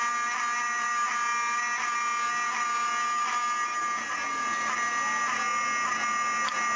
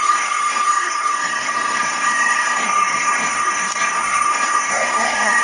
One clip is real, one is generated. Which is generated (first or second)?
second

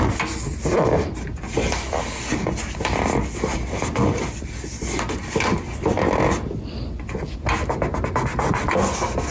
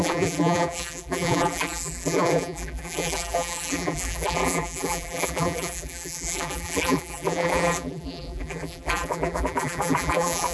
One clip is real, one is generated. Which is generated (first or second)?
second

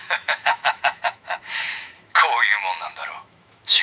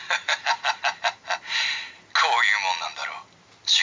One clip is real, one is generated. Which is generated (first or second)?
first